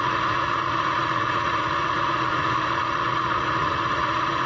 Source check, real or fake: fake